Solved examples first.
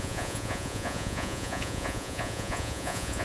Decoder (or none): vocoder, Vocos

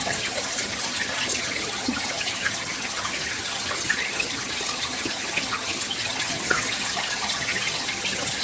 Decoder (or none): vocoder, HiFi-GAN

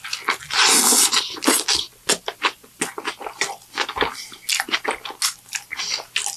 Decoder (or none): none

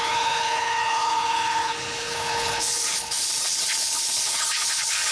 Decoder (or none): codec, HILCodec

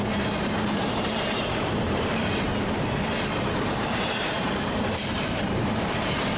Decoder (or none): vocoder, BigVGAN v2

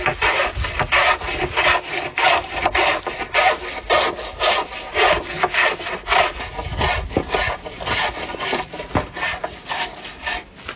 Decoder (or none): none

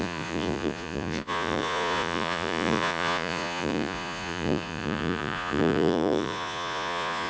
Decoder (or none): vocoder, Vocos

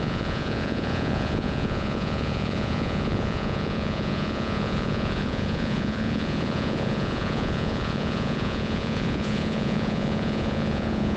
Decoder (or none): vocoder, Vocos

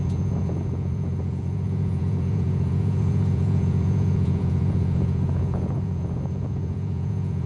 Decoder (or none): vocoder, Vocos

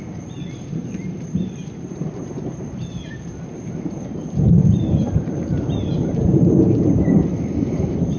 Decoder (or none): vocoder, BigVGAN v2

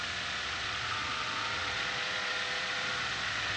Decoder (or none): vocoder, Vocos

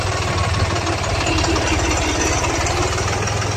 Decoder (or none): none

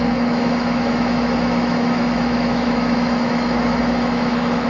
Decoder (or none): autoencoder, DAC-VAE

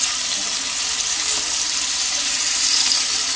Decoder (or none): vocoder, BigVGAN v2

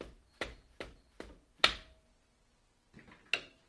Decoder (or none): none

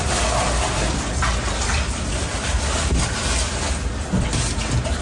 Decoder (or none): none